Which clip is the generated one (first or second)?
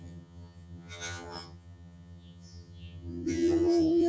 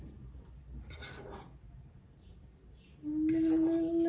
first